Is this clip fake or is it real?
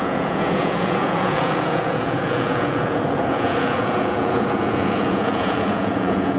fake